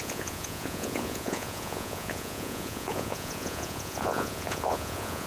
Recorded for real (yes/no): no